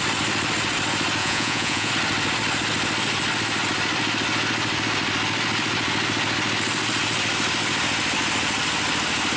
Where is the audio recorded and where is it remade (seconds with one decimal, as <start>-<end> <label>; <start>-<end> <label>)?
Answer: 0.0-1.2 recorded; 1.2-1.9 remade; 1.9-9.4 recorded